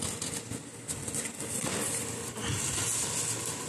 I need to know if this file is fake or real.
real